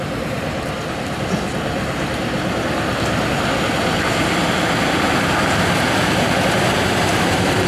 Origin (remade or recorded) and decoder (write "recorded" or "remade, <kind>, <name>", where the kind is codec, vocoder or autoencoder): remade, vocoder, BigVGAN v2